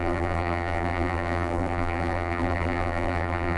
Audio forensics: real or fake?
fake